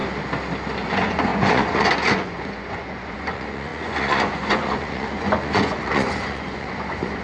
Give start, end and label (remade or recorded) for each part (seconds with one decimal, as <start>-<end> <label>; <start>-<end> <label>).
0.0-0.9 recorded; 0.9-7.2 remade